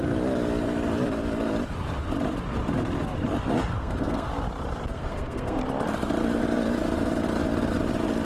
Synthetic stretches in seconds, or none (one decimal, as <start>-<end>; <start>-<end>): 3.8-4.3; 4.9-5.6